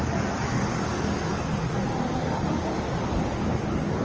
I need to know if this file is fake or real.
real